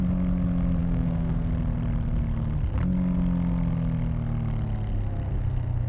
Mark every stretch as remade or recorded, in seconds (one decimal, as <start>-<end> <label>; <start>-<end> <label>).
0.0-0.8 recorded; 0.8-1.5 remade; 1.5-5.9 recorded